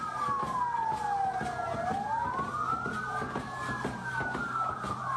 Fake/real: real